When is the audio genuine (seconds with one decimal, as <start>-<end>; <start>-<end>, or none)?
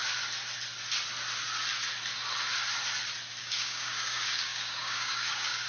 0.0-3.4